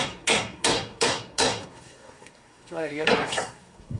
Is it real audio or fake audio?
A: fake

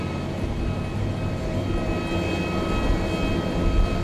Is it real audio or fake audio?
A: real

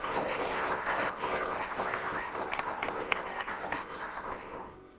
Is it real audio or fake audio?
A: fake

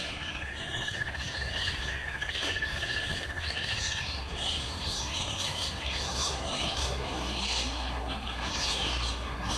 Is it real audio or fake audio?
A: fake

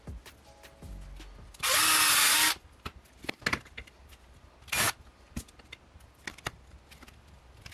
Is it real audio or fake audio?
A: real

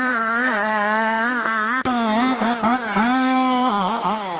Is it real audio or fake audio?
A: fake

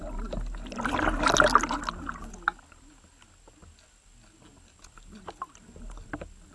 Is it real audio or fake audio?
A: real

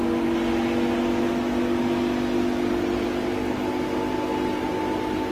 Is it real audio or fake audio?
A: real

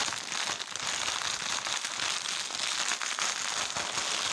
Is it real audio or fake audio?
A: real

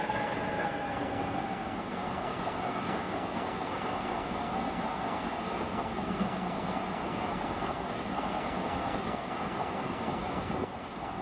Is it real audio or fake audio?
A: fake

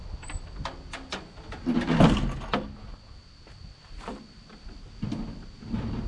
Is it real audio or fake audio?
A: real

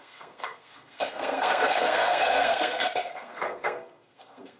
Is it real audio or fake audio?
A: fake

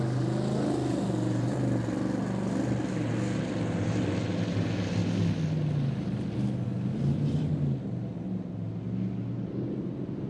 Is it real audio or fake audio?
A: real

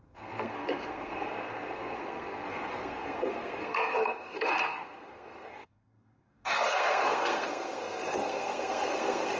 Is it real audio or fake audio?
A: fake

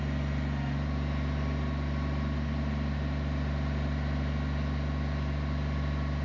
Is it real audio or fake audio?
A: real